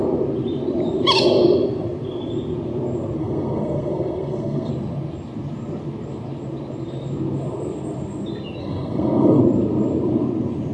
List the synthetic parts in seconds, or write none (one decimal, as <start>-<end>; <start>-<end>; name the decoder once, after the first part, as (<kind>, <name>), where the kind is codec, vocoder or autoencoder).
3.2-4.7 (codec, SNAC); 8.6-9.4